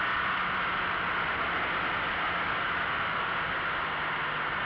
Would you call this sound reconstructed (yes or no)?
no